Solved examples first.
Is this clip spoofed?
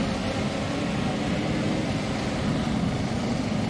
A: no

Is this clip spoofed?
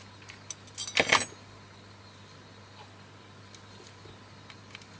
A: no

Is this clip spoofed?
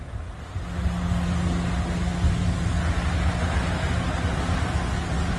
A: no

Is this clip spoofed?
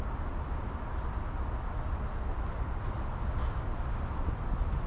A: no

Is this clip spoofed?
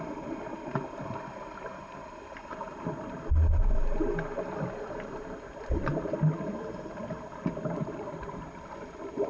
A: no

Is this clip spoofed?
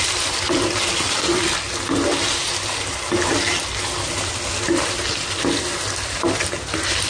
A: no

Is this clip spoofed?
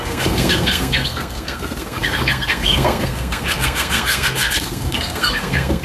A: yes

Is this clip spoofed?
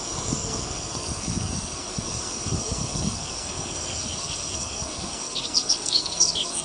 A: yes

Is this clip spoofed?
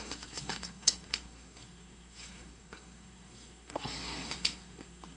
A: yes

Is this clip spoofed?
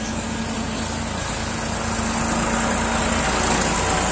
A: no